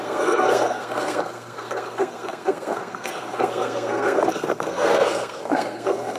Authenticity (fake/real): fake